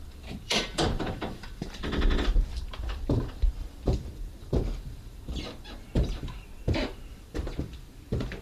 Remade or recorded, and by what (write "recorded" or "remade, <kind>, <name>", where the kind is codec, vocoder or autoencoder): remade, vocoder, BigVGAN v2